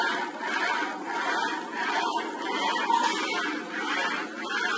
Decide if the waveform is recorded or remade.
recorded